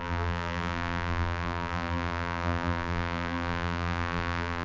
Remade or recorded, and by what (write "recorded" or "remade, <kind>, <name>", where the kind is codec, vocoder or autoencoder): remade, vocoder, BigVGAN v2